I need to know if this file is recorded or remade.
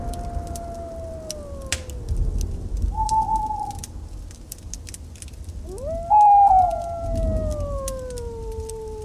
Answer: recorded